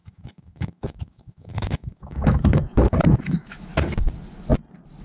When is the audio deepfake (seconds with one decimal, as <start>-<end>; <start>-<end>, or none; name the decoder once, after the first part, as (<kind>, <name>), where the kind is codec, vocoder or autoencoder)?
0.0-3.7 (autoencoder, DAC-VAE)